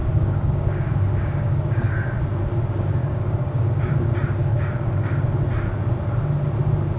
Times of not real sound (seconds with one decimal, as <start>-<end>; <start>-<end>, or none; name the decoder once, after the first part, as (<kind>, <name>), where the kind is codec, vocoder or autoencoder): 0.0-1.9 (codec, DAC); 3.0-3.9; 4.5-5.2